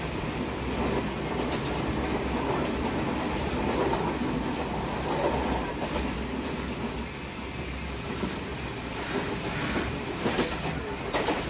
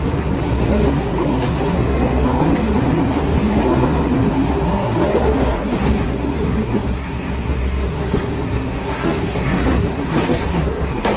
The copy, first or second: second